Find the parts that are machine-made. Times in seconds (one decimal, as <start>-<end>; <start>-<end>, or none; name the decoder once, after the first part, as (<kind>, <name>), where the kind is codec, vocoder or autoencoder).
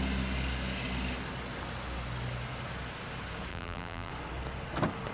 3.5-4.1 (vocoder, BigVGAN v2)